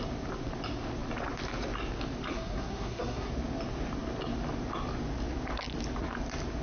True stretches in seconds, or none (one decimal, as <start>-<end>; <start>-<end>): 0.0-2.3; 3.3-6.6